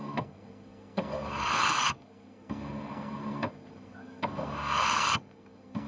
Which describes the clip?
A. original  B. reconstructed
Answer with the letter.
B